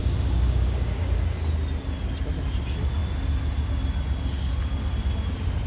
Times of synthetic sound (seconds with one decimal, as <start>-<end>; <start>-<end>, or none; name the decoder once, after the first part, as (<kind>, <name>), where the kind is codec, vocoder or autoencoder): 0.0-1.1 (codec, DAC)